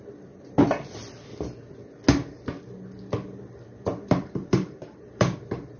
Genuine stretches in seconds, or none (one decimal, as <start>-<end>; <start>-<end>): 1.0-4.2